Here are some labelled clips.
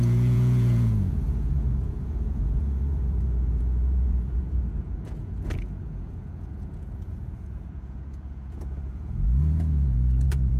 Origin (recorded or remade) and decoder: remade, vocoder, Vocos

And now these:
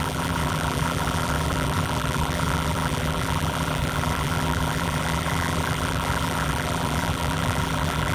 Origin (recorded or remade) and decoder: remade, vocoder, BigVGAN v2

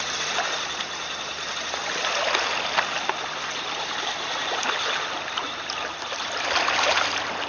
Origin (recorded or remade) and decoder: recorded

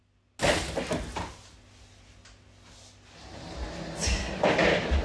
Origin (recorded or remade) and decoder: recorded